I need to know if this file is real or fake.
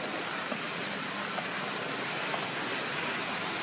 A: real